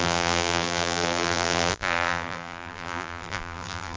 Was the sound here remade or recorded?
remade